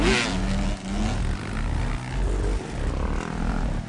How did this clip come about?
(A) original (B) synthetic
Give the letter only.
A